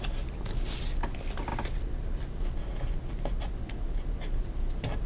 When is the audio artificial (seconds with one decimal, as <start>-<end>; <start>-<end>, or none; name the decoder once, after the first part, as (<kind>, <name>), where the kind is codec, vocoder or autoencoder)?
none